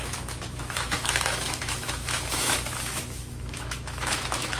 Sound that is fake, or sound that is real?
fake